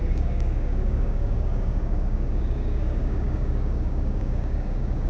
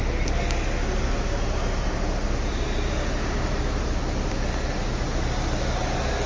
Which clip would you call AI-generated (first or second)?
first